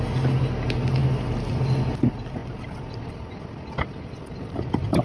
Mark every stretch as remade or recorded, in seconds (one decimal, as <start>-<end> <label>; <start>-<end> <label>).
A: 0.0-5.0 recorded